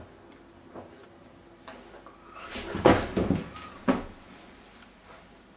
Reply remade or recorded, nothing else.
recorded